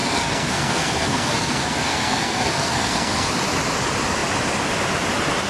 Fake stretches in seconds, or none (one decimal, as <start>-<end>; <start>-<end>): 0.0-3.3